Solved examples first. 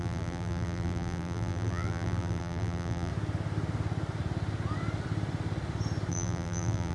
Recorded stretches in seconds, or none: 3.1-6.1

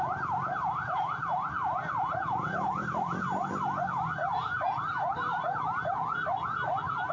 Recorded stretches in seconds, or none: 0.0-7.1

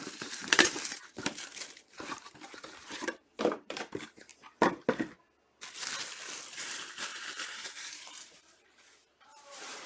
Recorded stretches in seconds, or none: 4.3-6.5

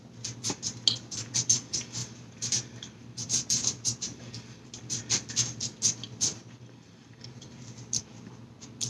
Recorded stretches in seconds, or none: 0.0-2.0; 4.3-6.3; 7.2-8.9

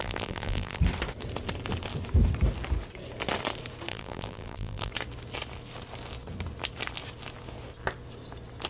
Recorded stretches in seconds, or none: 0.8-3.9; 4.9-8.7

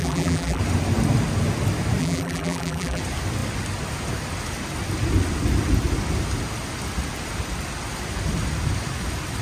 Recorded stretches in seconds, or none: 0.6-2.0; 3.0-9.4